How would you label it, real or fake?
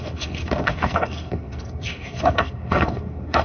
fake